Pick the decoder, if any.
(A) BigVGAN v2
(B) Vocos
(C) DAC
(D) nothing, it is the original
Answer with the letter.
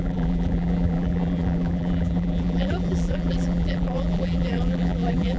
A